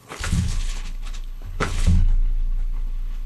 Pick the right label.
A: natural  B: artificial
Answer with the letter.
B